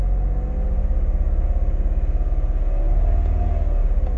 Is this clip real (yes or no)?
yes